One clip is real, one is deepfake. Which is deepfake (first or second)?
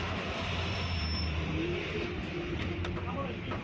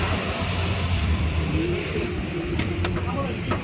second